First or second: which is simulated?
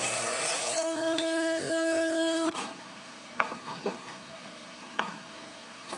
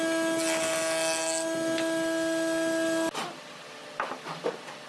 first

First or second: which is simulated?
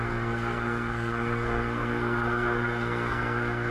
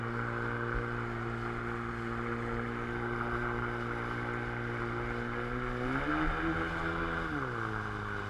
first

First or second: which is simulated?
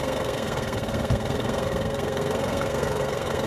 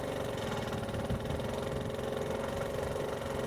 first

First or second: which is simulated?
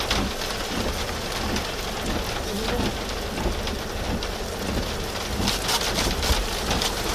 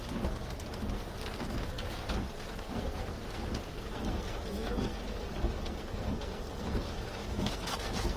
second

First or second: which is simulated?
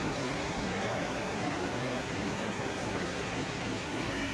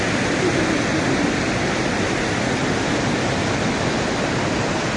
first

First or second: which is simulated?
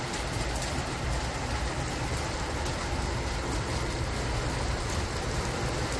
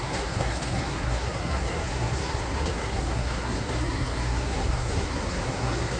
second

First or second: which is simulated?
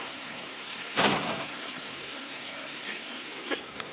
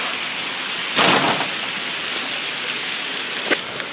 first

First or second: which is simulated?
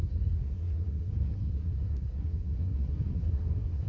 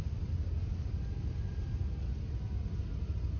first